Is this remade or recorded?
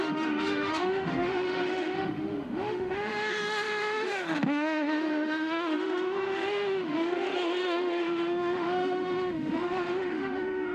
remade